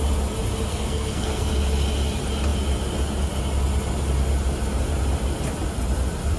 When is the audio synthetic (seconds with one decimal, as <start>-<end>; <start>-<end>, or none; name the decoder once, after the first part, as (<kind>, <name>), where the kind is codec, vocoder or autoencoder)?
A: 0.7-1.5 (codec, SNAC)